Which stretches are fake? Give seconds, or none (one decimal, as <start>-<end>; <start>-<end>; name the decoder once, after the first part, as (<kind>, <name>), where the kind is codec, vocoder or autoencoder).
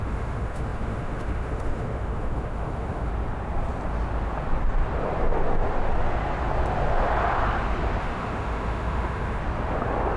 0.0-3.1 (autoencoder, DAC-VAE); 8.0-9.4